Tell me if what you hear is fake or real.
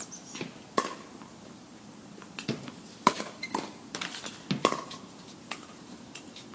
real